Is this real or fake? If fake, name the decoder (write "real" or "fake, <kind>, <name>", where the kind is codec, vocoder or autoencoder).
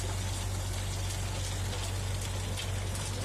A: real